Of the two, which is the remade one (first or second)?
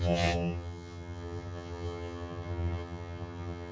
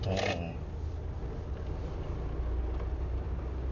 first